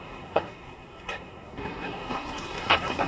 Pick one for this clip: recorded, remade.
remade